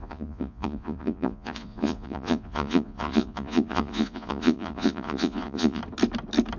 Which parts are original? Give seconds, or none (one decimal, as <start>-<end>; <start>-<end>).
5.8-6.6